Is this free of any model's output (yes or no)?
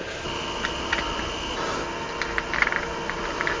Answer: yes